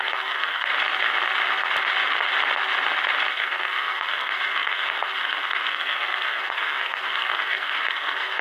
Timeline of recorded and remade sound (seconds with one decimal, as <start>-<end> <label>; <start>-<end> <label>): 0.0-0.7 remade; 0.7-3.3 recorded; 3.3-8.4 remade